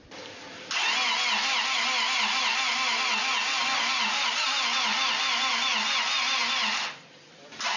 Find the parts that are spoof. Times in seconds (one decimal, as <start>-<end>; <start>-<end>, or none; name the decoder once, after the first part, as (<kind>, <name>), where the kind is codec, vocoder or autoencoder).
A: 3.6-4.5 (vocoder, BigVGAN v2)